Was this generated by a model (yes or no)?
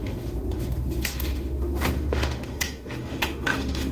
yes